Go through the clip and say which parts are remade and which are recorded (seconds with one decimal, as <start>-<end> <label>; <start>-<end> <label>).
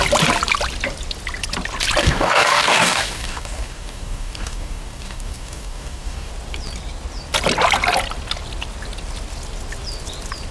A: 0.0-2.0 recorded; 2.0-6.3 remade; 6.3-10.5 recorded